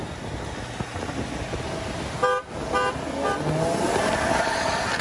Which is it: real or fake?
real